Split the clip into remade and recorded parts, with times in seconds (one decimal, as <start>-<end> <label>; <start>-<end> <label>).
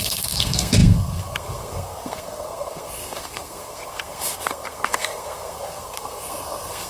0.0-6.9 remade